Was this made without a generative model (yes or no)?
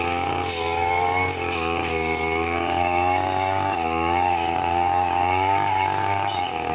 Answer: no